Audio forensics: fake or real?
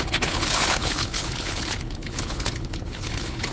fake